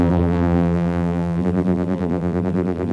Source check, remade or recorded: remade